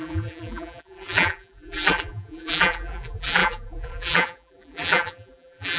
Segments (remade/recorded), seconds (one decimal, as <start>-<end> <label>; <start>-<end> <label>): 0.0-5.8 remade